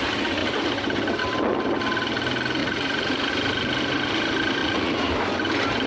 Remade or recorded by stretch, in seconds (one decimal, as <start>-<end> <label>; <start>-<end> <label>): 0.0-2.6 recorded; 2.6-3.3 remade; 3.3-4.6 recorded; 4.6-5.1 remade; 5.1-5.9 recorded